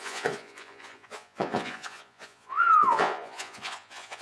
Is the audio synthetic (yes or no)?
yes